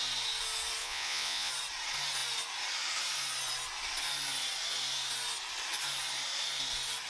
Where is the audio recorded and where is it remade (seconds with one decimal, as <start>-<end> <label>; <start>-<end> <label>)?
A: 0.0-0.8 recorded; 0.8-1.5 remade; 1.5-7.1 recorded